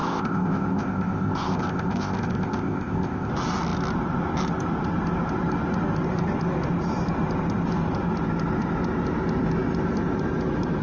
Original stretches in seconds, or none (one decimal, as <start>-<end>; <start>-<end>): 3.3-10.8